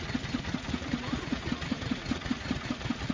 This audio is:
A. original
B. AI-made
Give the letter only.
B